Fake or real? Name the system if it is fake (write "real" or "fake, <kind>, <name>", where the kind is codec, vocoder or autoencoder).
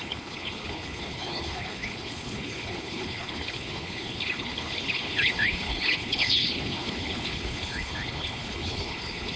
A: fake, codec, HILCodec